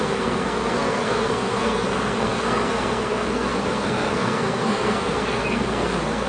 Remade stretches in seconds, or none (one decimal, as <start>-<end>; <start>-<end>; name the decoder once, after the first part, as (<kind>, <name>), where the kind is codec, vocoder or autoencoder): 0.0-6.3 (codec, SNAC)